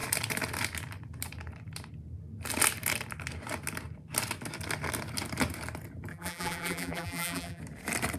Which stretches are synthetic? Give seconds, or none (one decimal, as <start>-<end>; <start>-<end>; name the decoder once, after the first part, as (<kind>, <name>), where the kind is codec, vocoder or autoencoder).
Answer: 6.1-7.6 (vocoder, BigVGAN v2)